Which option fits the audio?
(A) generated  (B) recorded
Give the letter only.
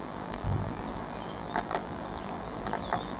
A